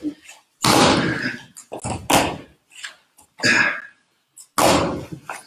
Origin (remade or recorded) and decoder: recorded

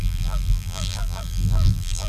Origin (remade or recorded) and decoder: remade, vocoder, BigVGAN v2